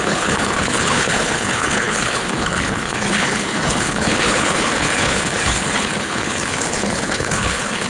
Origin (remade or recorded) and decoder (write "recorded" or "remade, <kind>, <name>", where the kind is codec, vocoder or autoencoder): remade, codec, HILCodec